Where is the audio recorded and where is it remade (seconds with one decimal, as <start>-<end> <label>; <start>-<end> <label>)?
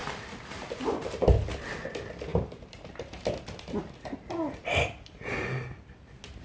0.0-6.4 recorded